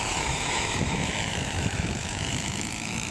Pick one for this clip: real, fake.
fake